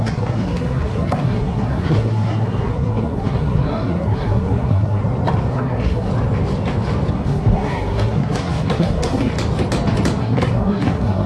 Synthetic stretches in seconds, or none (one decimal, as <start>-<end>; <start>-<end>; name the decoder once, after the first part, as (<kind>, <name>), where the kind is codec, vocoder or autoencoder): 0.0-5.0 (codec, SNAC); 5.5-6.1; 7.1-9.3; 10.2-11.3